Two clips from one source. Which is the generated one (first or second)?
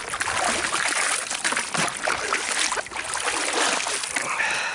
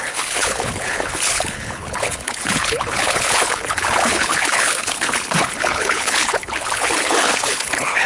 second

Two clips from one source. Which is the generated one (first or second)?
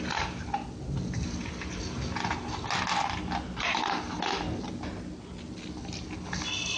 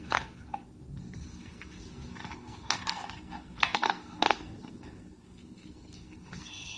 second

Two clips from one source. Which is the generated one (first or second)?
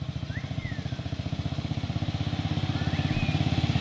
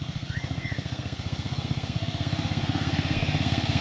second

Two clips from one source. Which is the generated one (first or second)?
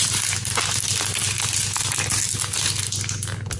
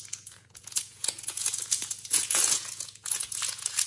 second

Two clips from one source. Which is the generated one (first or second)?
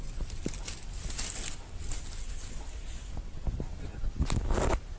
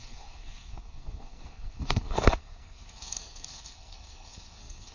second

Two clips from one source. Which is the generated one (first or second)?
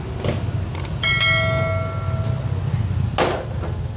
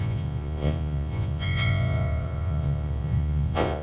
second